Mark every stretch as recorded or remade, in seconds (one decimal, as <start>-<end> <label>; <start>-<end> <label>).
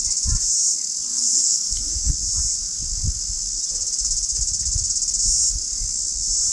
0.0-1.1 recorded; 1.1-2.1 remade; 2.1-6.5 recorded